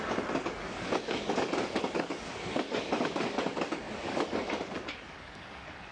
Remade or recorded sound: remade